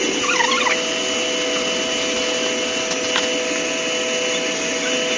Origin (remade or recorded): recorded